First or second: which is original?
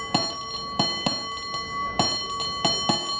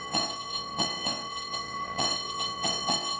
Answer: first